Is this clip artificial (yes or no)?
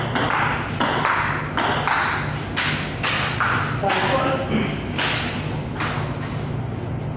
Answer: no